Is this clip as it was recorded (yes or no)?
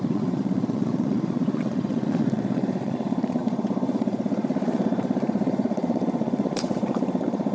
no